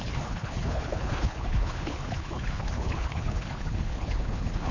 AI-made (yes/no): yes